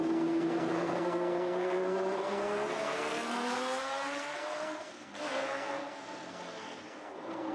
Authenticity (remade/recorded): remade